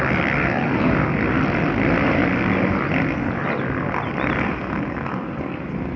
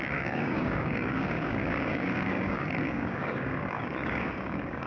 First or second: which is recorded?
first